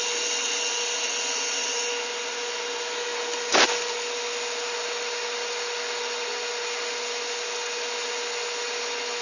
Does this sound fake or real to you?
real